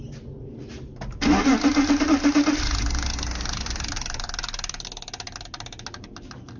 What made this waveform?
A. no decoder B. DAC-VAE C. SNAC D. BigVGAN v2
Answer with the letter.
A